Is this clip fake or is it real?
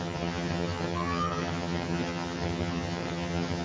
fake